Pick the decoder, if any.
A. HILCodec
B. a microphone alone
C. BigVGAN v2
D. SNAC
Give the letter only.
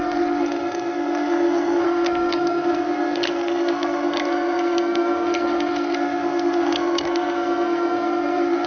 D